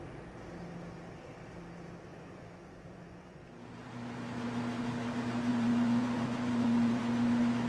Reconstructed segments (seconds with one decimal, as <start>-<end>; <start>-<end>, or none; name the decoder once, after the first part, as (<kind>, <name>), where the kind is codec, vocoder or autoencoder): 2.1-3.4 (vocoder, Vocos); 5.5-7.0